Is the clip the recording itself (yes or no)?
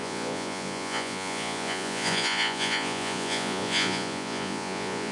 no